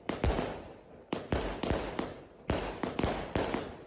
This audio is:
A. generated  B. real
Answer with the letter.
B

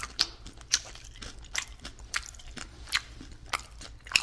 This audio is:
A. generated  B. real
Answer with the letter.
A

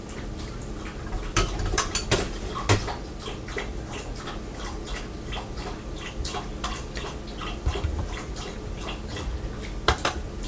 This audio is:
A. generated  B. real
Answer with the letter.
B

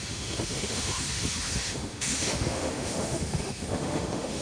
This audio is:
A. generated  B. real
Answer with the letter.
A